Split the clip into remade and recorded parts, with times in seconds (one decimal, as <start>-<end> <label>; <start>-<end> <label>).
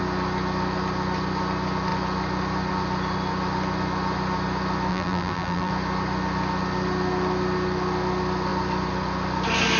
0.0-4.9 recorded; 4.9-5.7 remade; 5.7-9.8 recorded